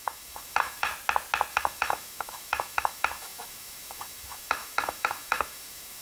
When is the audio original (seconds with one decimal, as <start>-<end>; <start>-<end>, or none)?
0.9-1.5